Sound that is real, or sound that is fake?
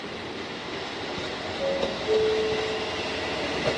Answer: real